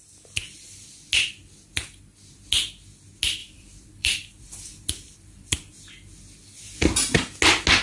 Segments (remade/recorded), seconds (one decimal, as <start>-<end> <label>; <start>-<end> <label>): 0.0-3.4 recorded; 3.4-5.7 remade; 5.7-7.8 recorded